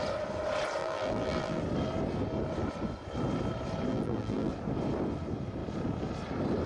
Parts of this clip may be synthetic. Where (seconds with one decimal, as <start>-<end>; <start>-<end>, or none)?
0.8-1.6; 3.9-4.5